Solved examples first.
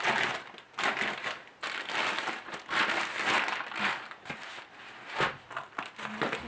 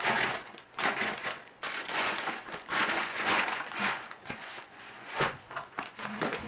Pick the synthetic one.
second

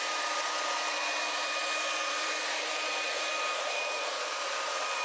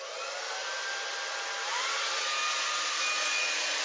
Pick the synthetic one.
first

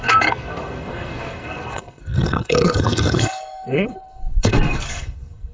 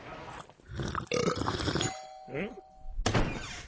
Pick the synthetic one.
first